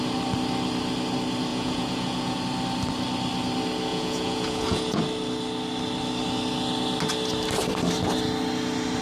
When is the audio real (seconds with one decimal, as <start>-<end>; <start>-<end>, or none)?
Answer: 0.0-1.5; 2.4-3.9; 5.0-9.0